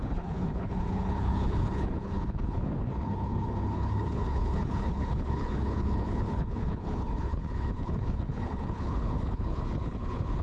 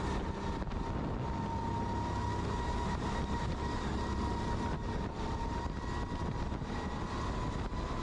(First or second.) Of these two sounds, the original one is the second